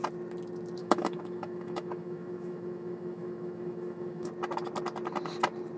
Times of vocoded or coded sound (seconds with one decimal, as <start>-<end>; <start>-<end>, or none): 0.8-4.3